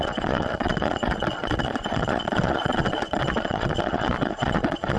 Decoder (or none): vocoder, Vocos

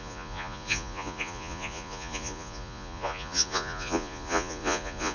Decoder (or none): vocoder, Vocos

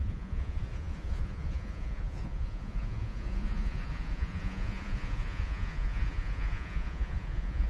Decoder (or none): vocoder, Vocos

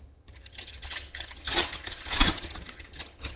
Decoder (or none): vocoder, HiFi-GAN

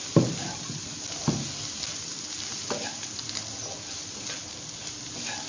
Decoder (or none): none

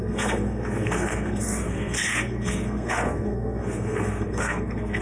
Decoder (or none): codec, SNAC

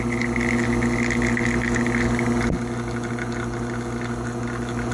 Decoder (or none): none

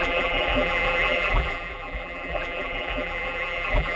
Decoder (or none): vocoder, BigVGAN v2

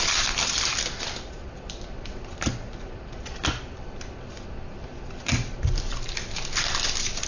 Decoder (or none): none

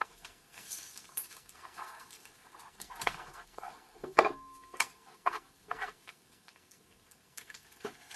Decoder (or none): codec, SNAC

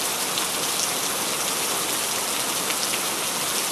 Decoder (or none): none